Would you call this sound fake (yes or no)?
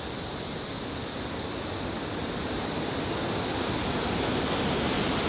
no